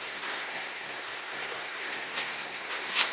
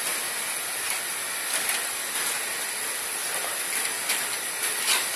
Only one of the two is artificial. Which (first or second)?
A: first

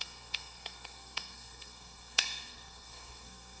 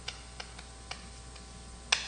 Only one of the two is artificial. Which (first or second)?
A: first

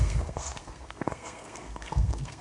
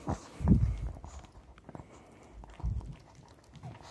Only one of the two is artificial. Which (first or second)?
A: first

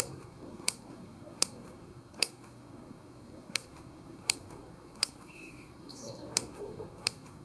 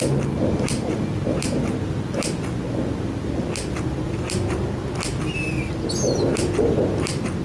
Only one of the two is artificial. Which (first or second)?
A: first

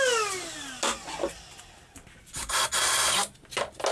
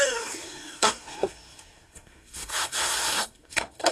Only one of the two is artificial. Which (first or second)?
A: second